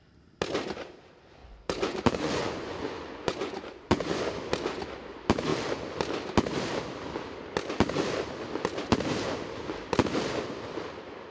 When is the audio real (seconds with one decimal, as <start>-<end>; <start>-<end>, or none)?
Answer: 0.0-1.4; 4.2-11.3